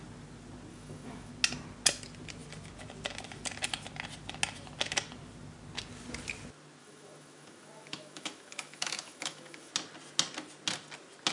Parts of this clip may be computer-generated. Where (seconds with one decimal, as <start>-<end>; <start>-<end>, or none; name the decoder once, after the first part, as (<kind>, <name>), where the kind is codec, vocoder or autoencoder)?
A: 0.7-1.3 (autoencoder, DAC-VAE); 6.8-9.7